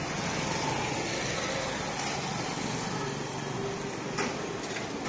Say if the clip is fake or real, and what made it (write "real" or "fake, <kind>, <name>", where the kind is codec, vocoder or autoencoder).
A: real